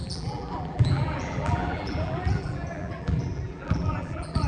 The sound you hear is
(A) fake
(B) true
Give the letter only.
A